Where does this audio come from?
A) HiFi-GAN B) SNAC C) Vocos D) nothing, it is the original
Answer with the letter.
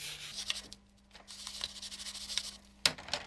D